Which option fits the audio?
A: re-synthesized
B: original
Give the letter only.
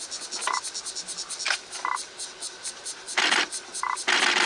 B